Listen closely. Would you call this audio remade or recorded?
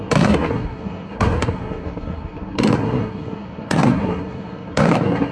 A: remade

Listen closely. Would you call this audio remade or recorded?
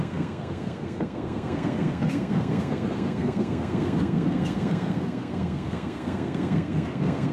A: remade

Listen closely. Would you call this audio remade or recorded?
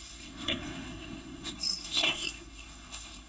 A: remade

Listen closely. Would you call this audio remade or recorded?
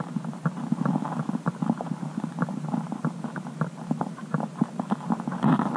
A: recorded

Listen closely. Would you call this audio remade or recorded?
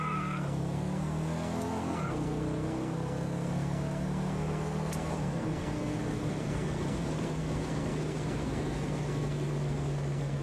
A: remade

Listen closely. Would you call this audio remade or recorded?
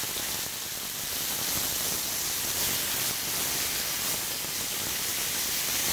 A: recorded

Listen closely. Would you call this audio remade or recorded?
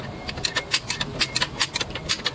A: recorded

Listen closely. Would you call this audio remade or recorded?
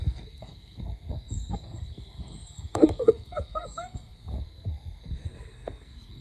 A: remade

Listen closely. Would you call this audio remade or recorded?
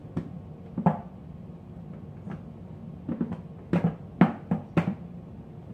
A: recorded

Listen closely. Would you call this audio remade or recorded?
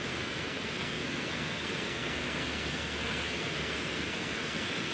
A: remade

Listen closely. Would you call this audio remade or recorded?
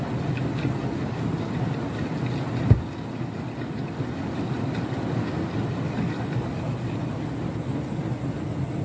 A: recorded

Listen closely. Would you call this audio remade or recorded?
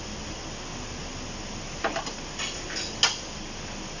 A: recorded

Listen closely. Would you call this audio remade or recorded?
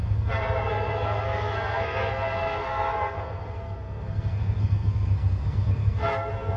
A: remade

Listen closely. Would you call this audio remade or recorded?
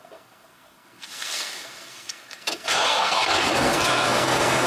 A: remade